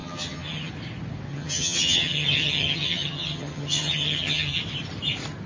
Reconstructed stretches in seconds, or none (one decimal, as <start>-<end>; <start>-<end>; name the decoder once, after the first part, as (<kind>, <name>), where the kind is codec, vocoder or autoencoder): 0.0-0.7 (vocoder, HiFi-GAN); 1.3-4.6